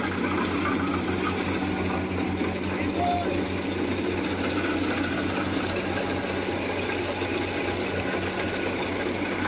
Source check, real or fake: real